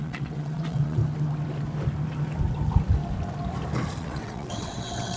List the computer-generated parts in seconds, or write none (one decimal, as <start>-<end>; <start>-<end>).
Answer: 0.0-1.0; 4.0-5.2